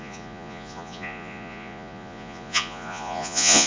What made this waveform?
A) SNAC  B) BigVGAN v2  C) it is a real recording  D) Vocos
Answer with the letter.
D